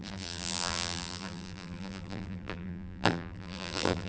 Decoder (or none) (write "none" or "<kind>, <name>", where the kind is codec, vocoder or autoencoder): vocoder, BigVGAN v2